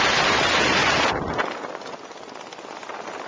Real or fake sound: real